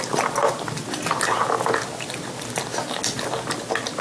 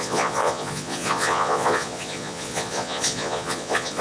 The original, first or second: first